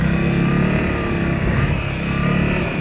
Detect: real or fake real